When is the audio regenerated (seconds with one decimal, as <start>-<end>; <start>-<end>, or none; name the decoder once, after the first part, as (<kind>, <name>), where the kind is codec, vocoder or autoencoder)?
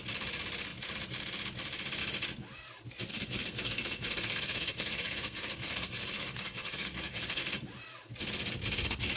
3.1-7.4 (codec, SNAC)